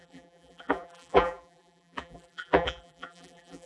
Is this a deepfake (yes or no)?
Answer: yes